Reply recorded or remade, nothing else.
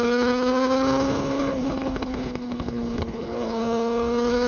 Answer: remade